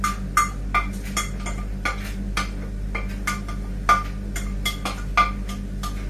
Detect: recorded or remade recorded